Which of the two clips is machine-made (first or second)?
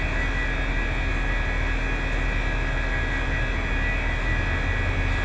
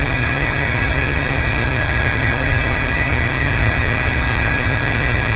second